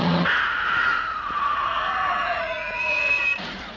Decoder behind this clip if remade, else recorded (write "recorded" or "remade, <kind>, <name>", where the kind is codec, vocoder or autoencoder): remade, vocoder, Vocos